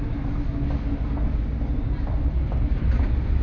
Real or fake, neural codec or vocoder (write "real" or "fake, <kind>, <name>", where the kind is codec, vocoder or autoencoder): real